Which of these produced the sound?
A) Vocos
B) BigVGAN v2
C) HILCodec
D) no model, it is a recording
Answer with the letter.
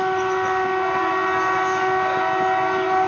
D